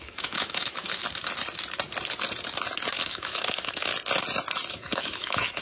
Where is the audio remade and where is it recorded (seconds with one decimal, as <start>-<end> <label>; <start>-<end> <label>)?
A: 0.0-1.0 remade; 1.0-3.0 recorded; 3.0-3.9 remade; 3.9-4.7 recorded; 4.7-5.6 remade